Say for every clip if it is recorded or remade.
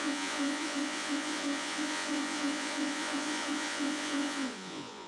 remade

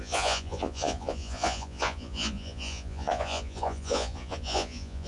remade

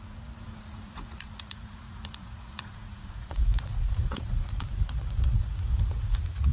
remade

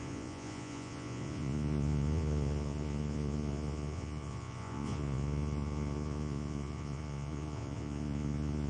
remade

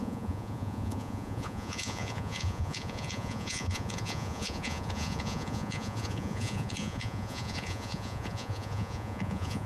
remade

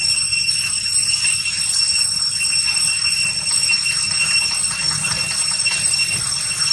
recorded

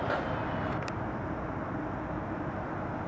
recorded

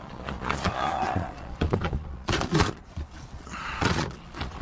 remade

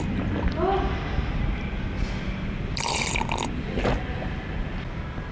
recorded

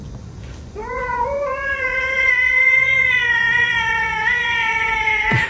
remade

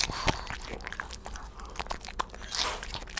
recorded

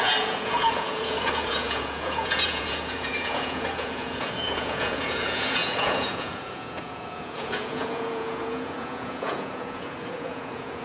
remade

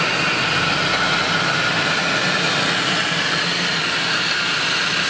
recorded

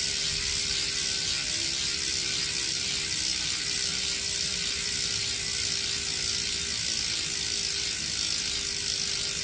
recorded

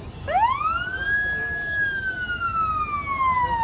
recorded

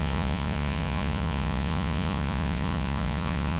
remade